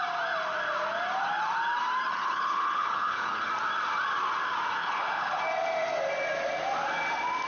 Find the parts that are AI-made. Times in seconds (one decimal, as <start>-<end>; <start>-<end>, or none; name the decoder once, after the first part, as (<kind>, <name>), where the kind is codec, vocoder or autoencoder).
2.1-3.5 (codec, HILCodec); 4.8-5.4